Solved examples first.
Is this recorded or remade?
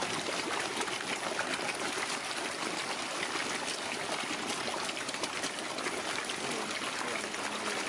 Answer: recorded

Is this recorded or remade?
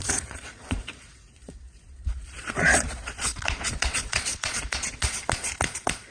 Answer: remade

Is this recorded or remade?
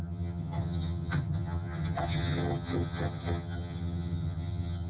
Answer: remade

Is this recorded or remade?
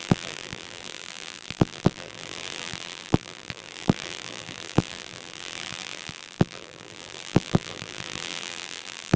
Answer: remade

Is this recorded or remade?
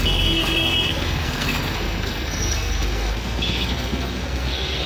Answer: remade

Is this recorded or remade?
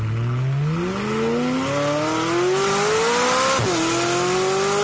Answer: recorded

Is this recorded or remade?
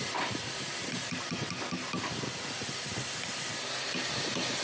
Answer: recorded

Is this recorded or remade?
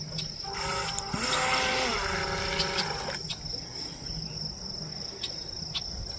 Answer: recorded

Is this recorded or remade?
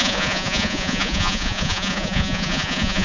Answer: remade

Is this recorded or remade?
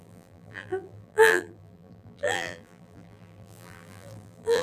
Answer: remade